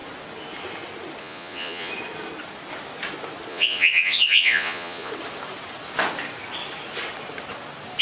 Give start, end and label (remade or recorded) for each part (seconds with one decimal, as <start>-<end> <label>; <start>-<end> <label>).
0.0-1.2 recorded; 1.2-1.9 remade; 1.9-3.5 recorded; 3.5-5.1 remade; 5.1-8.0 recorded